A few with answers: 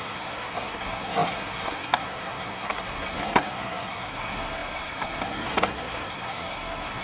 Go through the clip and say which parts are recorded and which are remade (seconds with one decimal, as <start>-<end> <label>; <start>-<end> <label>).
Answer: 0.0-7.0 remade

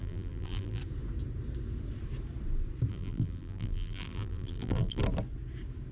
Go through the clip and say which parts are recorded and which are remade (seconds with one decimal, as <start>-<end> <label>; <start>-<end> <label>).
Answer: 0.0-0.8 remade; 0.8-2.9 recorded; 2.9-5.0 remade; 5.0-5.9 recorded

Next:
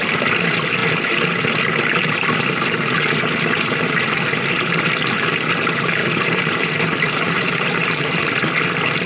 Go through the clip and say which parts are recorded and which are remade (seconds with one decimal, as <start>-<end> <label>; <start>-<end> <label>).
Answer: 0.0-6.0 recorded; 6.0-8.2 remade; 8.2-9.1 recorded

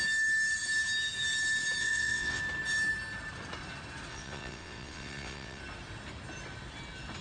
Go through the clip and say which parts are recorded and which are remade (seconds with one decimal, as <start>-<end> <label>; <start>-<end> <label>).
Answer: 0.0-1.8 recorded; 1.8-2.4 remade; 2.4-4.1 recorded; 4.1-5.6 remade; 5.6-7.2 recorded

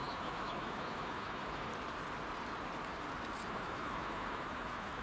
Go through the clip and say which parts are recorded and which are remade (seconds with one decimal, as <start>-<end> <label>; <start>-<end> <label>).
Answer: 0.0-1.7 remade; 1.7-3.5 recorded; 3.5-5.0 remade

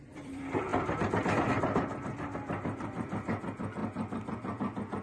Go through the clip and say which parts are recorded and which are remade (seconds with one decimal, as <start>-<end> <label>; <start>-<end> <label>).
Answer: 0.0-3.8 remade; 3.8-5.0 recorded

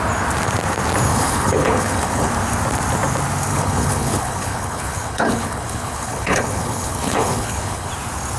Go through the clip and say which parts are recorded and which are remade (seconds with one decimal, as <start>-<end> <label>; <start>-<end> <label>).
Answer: 0.0-1.1 recorded; 1.1-2.3 remade; 2.3-3.5 recorded; 3.5-7.9 remade; 7.9-8.4 recorded